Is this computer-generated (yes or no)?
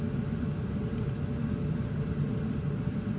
no